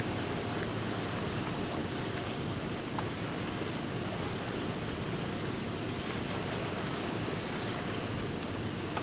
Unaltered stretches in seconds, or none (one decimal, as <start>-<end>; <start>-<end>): 0.0-1.8; 3.4-6.6